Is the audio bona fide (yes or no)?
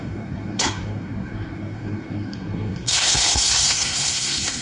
no